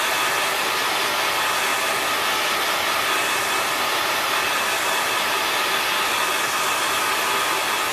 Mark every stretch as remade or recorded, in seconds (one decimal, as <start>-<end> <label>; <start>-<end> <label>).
0.0-7.9 recorded